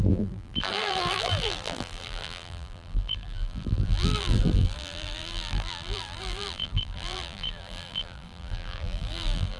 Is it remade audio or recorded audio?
remade